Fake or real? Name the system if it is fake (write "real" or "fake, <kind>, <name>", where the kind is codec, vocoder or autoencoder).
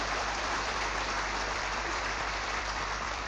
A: fake, vocoder, BigVGAN v2